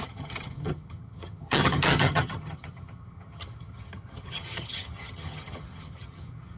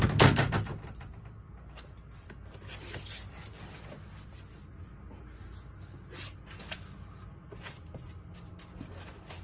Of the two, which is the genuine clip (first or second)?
second